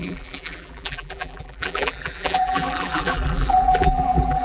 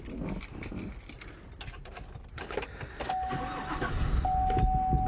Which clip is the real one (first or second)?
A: second